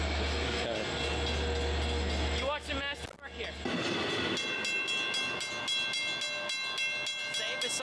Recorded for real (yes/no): yes